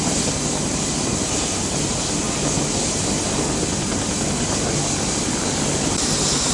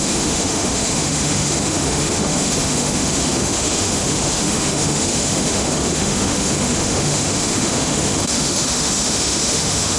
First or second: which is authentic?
first